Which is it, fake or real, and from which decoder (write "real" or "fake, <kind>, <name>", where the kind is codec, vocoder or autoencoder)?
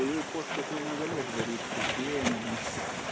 real